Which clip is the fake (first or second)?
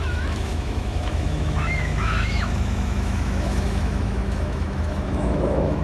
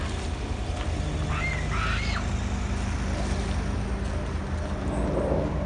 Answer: first